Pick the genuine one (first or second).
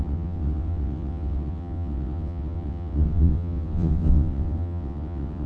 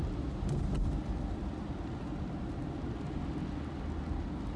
second